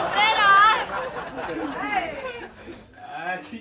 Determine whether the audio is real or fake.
real